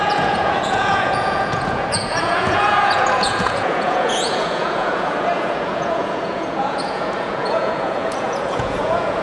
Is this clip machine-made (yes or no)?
yes